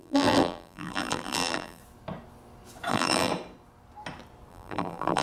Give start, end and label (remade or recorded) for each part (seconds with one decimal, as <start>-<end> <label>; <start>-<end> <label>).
0.0-1.8 remade; 1.8-2.9 recorded; 2.9-3.3 remade; 3.3-4.5 recorded; 4.5-5.2 remade

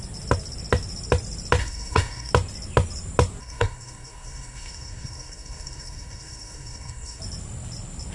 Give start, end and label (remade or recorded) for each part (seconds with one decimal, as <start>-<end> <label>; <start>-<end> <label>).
0.0-1.6 recorded; 1.6-2.3 remade; 2.3-3.4 recorded; 3.4-7.2 remade; 7.2-8.1 recorded

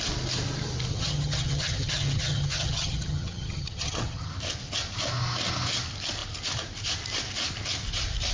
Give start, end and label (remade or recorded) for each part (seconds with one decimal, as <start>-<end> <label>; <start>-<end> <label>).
0.0-0.9 recorded; 0.9-4.3 remade; 4.3-8.3 recorded

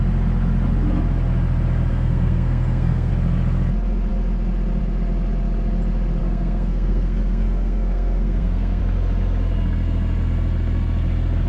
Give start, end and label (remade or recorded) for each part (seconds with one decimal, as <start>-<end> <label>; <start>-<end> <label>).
0.0-1.9 recorded; 1.9-3.1 remade; 3.1-6.2 recorded; 6.2-8.8 remade; 8.8-11.5 recorded

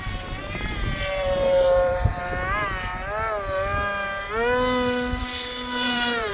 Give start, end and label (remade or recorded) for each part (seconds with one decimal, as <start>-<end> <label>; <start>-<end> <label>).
0.0-2.2 remade; 2.2-5.2 recorded; 5.2-6.3 remade

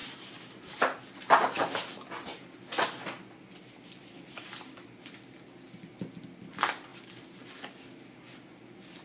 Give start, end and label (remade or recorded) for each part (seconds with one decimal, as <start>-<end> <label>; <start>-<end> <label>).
0.0-1.6 remade; 1.6-9.0 recorded

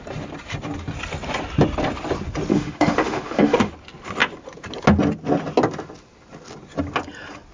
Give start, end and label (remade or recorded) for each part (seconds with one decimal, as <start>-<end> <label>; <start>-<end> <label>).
0.0-2.5 recorded; 2.5-3.7 remade; 3.7-7.5 recorded